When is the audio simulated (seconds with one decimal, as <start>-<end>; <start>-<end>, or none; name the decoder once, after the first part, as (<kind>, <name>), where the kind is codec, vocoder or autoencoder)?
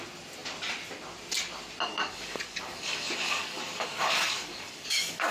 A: 1.9-5.3 (codec, DAC)